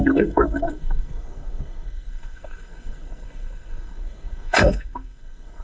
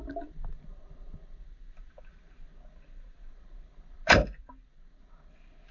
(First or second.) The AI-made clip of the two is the first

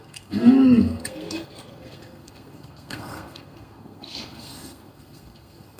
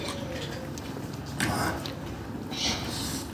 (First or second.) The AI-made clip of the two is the first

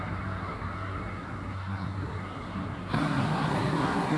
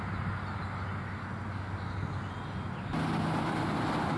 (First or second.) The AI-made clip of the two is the first